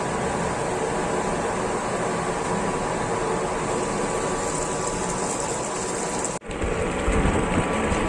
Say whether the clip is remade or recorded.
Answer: recorded